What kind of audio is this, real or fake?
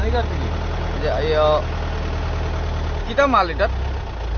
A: real